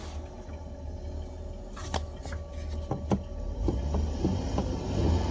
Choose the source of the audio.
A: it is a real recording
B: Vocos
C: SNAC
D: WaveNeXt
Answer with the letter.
A